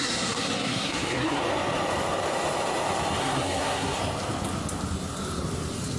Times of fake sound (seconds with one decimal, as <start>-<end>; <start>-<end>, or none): 0.0-1.4; 3.2-4.0